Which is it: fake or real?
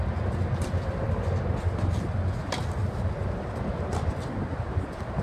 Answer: real